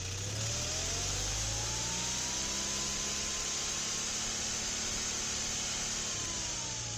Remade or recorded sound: recorded